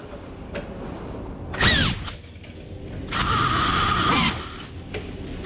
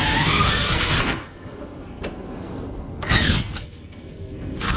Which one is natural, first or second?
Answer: first